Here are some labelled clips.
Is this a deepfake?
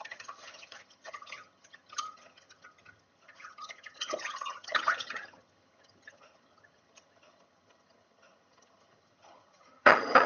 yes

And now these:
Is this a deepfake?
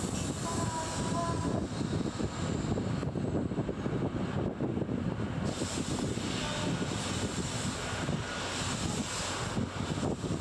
no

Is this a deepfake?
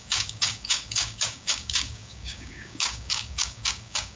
yes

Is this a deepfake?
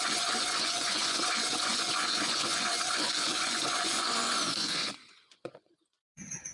yes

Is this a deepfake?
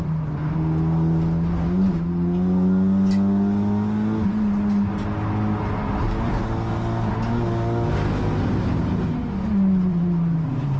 no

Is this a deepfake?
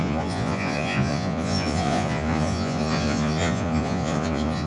yes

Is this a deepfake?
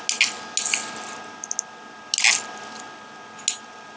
no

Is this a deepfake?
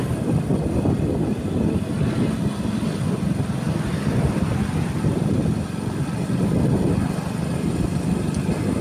no